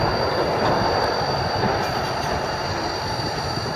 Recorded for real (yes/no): yes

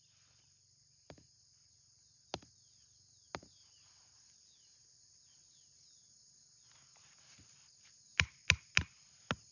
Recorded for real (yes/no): yes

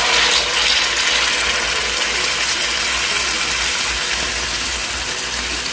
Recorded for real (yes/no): yes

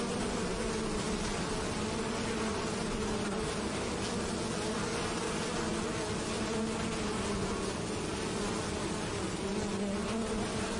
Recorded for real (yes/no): yes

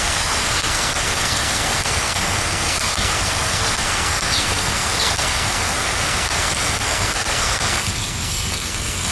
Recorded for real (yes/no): no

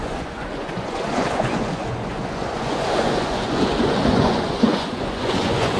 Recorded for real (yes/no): no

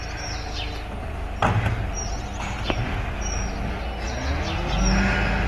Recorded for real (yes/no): yes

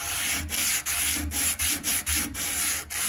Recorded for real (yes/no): no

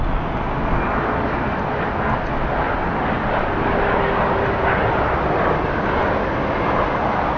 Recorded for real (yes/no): yes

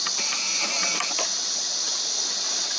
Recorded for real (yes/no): yes